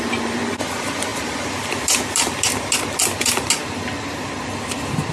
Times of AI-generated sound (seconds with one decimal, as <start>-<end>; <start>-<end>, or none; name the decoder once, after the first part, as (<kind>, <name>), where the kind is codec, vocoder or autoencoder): none